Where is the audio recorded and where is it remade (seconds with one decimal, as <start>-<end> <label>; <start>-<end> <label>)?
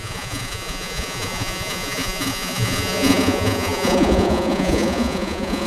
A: 0.0-5.7 remade